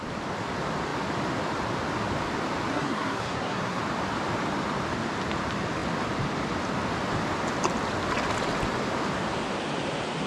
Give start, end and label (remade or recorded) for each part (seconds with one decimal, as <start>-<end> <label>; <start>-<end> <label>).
0.0-2.7 recorded; 2.7-3.8 remade; 3.8-10.3 recorded